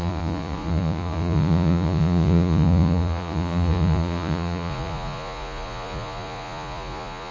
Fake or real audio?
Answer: fake